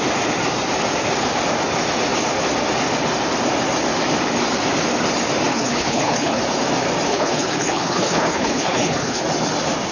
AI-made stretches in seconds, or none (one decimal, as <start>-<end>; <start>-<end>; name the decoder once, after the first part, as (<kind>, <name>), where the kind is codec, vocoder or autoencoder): 5.5-6.4 (codec, HILCodec); 7.1-9.2